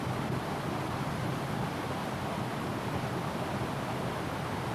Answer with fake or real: real